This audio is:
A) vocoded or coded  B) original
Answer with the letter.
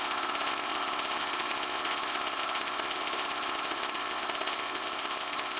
A